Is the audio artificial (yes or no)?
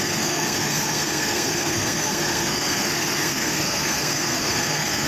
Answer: yes